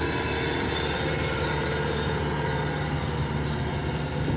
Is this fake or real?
real